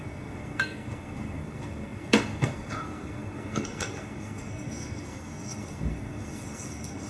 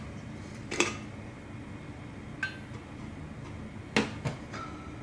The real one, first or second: second